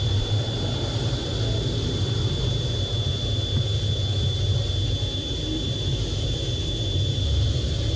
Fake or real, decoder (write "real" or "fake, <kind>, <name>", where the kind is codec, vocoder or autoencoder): real